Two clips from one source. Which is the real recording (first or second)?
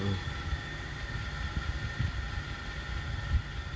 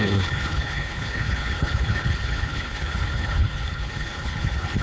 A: first